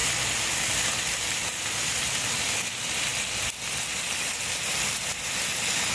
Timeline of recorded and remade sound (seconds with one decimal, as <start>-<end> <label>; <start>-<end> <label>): 0.0-2.6 remade; 2.6-5.9 recorded

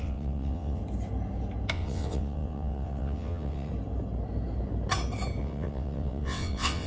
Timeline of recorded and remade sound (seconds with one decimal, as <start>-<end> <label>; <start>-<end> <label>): 0.0-0.8 remade; 0.8-1.7 recorded; 1.7-3.7 remade; 3.7-5.4 recorded; 5.4-6.9 remade